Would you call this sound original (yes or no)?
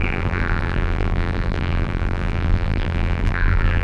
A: no